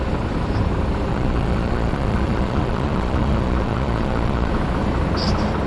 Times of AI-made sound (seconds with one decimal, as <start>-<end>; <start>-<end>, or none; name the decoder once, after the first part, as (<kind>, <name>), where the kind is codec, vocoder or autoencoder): 1.1-4.5 (vocoder, Vocos)